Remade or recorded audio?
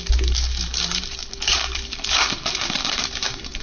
remade